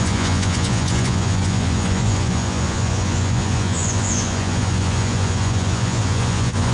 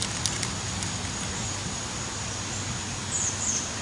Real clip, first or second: second